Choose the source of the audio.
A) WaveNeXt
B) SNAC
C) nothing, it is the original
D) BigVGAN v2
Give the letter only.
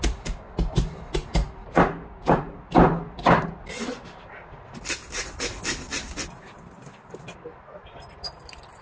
C